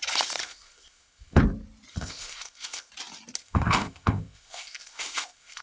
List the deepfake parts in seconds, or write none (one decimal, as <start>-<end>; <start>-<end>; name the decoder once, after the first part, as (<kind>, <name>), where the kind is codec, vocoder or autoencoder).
0.4-1.4 (codec, ZipCodec); 1.9-2.9; 3.4-5.6